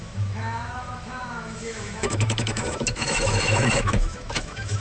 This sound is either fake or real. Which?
fake